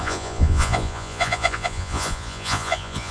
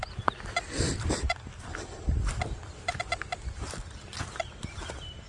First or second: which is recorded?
second